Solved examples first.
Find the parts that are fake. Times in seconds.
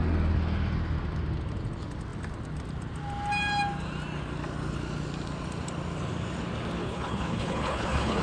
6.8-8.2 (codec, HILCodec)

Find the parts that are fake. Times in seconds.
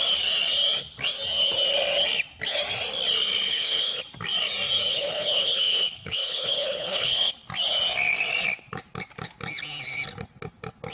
3.5-4.0 (codec, HILCodec); 4.9-7.3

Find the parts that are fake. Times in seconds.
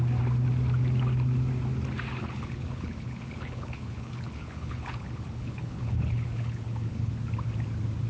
2.2-7.1 (codec, HILCodec)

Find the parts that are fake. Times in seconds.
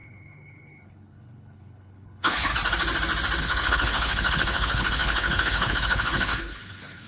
0.0-2.5 (codec, HILCodec); 3.4-7.1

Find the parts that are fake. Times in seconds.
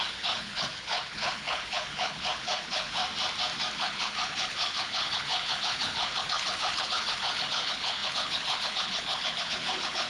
0.0-3.0 (codec, HILCodec); 3.8-10.1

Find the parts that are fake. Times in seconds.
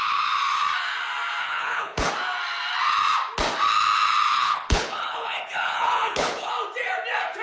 1.4-2.1 (codec, HILCodec); 4.3-6.5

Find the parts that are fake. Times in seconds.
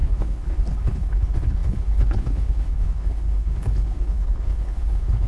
0.0-5.3 (codec, HILCodec)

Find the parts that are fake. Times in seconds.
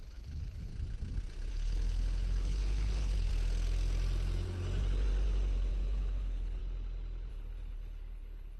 0.0-0.7 (codec, HILCodec); 1.5-3.3; 5.7-6.6; 7.3-8.6